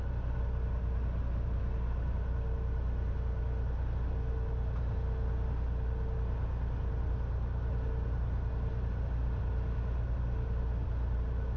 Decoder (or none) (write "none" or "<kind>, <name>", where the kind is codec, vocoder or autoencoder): none